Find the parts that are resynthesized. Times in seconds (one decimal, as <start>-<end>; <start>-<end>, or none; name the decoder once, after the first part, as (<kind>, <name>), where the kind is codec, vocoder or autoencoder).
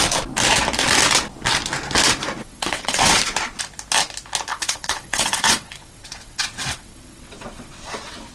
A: 2.4-3.2 (vocoder, WaveNeXt); 4.5-8.3